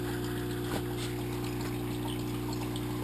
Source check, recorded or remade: recorded